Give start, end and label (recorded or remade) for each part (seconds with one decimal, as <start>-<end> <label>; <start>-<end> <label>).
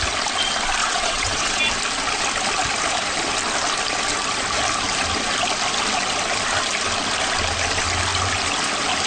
0.0-0.8 recorded; 0.8-1.6 remade; 1.6-9.1 recorded